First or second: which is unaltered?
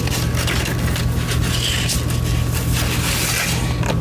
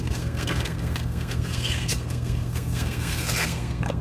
first